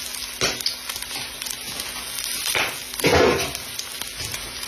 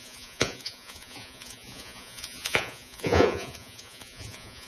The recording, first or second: first